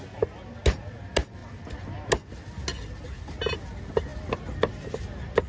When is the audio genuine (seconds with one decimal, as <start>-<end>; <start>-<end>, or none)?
0.0-5.5